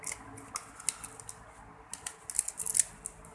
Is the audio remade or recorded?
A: recorded